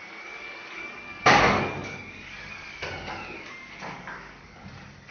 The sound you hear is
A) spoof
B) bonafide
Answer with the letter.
A